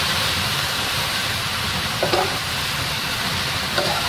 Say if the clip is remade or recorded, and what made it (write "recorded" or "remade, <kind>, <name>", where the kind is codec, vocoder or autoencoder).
remade, vocoder, BigVGAN v2